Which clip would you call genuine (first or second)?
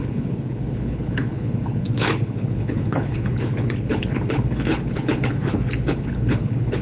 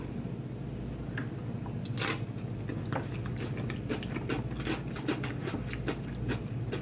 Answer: second